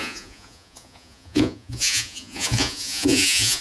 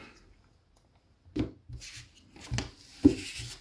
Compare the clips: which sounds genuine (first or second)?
second